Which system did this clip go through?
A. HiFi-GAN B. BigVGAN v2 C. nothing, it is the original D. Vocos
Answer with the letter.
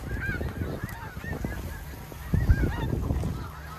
C